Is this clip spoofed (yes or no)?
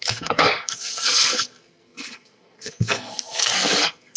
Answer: yes